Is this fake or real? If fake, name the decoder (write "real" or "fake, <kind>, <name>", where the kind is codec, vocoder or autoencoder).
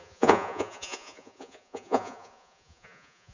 fake, vocoder, Vocos